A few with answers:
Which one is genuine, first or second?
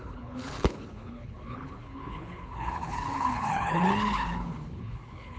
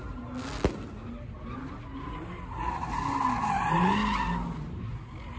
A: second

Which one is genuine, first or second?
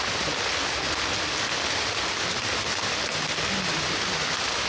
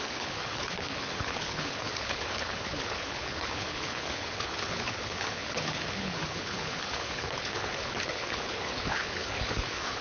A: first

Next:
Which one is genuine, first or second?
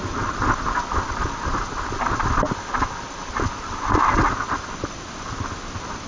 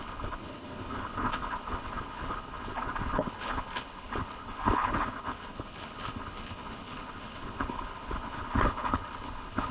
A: first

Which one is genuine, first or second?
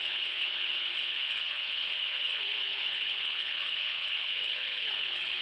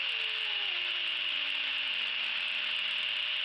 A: second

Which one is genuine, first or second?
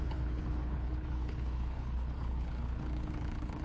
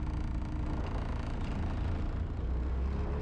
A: second